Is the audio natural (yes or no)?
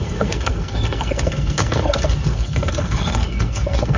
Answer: no